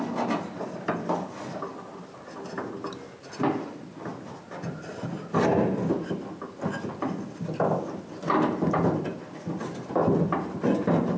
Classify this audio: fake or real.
real